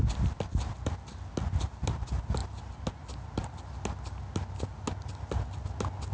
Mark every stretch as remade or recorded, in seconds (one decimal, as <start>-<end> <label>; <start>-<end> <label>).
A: 0.0-6.1 recorded